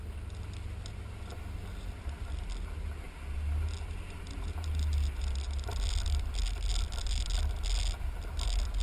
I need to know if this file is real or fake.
real